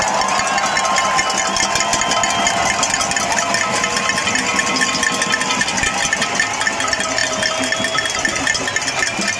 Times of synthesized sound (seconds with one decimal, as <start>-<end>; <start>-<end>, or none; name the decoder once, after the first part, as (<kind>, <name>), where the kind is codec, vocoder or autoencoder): none

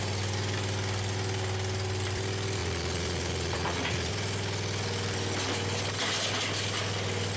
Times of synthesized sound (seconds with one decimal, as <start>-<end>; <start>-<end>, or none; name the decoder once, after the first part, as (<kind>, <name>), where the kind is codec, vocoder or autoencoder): 2.6-4.1 (vocoder, Vocos)

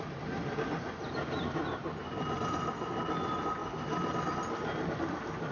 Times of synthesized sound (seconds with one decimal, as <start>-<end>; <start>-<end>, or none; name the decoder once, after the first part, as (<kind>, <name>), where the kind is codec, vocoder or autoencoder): none

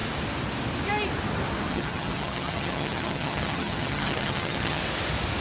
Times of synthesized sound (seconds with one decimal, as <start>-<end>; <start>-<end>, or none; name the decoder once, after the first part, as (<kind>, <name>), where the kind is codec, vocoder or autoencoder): 1.7-4.8 (vocoder, HiFi-GAN)

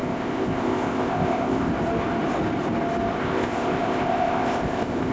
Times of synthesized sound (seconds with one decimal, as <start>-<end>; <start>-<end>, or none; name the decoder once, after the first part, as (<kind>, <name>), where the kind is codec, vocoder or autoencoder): 0.0-1.7 (codec, ZipCodec); 3.2-5.1

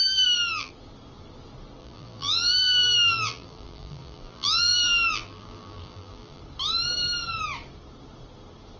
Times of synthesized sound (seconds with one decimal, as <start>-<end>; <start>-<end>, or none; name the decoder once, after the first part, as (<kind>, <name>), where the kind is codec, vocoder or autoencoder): 0.0-0.7 (vocoder, BigVGAN v2); 1.8-6.4

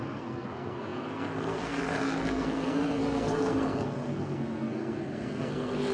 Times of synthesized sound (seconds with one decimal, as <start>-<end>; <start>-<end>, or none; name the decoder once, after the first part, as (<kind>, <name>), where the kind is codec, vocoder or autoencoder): 0.0-5.9 (codec, SNAC)